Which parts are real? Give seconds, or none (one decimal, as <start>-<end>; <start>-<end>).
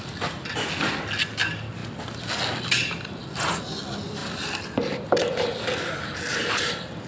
0.0-7.1